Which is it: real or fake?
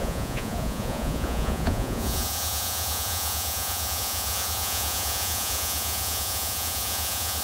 fake